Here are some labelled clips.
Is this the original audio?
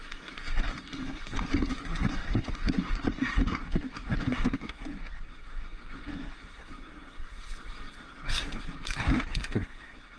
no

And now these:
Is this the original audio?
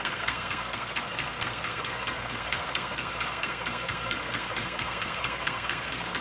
no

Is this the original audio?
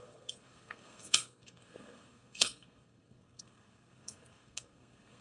no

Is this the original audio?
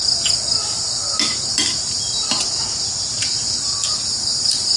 yes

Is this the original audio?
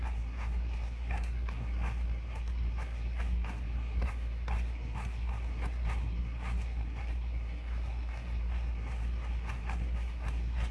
no